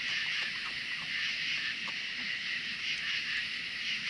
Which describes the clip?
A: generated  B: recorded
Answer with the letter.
B